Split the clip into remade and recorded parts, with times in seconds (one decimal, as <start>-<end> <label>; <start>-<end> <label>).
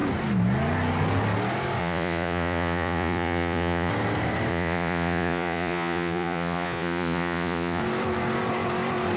0.0-1.8 recorded; 1.8-3.9 remade; 3.9-4.5 recorded; 4.5-7.8 remade; 7.8-9.2 recorded